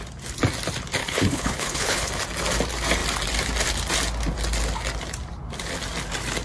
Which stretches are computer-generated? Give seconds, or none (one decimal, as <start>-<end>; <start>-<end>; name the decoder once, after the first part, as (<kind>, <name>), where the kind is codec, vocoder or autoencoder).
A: 1.0-2.1 (codec, HILCodec)